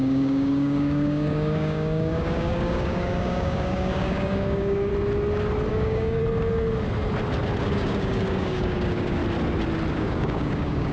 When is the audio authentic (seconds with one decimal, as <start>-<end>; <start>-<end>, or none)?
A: 4.9-5.7; 6.2-7.6; 9.2-9.9